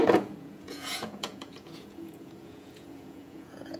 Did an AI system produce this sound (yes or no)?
yes